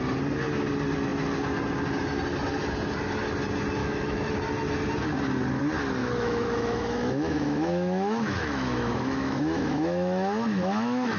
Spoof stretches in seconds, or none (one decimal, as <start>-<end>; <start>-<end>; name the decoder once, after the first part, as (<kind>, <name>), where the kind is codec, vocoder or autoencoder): 3.8-4.3 (autoencoder, DAC-VAE); 6.0-11.2